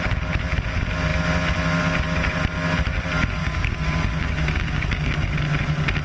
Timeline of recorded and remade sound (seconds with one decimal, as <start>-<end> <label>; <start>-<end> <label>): 0.0-3.4 recorded; 3.4-5.3 remade; 5.3-6.0 recorded

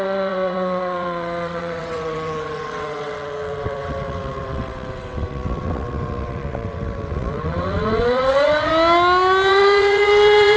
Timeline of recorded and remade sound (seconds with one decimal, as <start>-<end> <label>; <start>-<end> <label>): 0.0-8.7 remade; 8.7-9.5 recorded; 9.5-10.6 remade

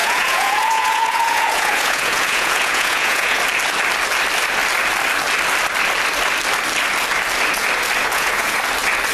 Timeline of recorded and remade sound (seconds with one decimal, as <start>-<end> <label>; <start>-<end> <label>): 0.0-3.4 remade; 3.4-8.0 recorded; 8.0-8.6 remade; 8.6-9.1 recorded

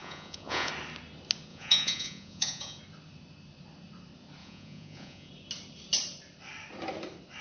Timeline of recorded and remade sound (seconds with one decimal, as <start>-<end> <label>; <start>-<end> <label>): 0.0-0.7 remade; 0.7-1.5 recorded; 1.5-2.8 remade; 2.8-4.4 recorded; 4.4-5.3 remade; 5.3-7.4 recorded

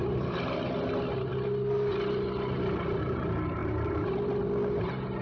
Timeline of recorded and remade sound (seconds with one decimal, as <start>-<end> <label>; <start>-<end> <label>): 0.0-3.6 recorded; 3.6-4.1 remade; 4.1-5.2 recorded

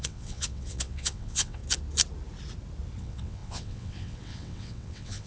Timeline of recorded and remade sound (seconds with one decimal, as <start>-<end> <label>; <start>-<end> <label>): 0.0-1.6 remade; 1.6-3.0 recorded; 3.0-5.3 remade

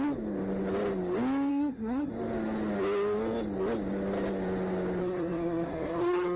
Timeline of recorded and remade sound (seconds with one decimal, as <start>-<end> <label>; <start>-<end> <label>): 0.0-1.5 recorded; 1.5-2.1 remade; 2.1-5.0 recorded; 5.0-6.4 remade